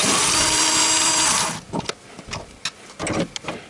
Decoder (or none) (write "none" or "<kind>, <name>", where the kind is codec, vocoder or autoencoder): none